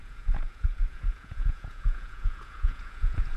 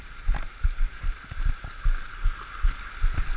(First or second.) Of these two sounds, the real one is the second